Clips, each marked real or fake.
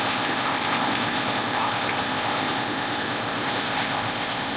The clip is fake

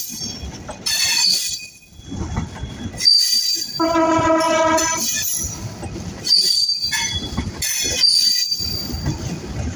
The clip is real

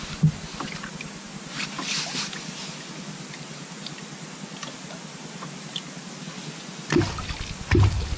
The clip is real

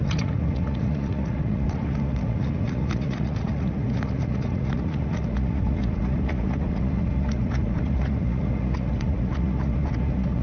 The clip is fake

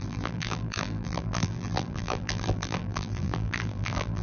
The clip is fake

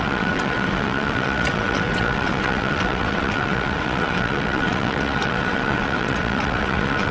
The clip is fake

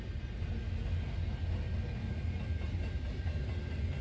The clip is real